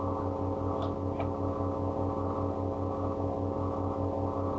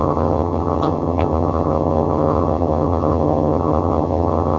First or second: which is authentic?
first